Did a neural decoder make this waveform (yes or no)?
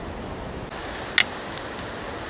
no